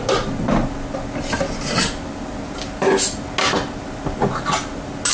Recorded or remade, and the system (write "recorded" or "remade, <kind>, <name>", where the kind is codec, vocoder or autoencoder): recorded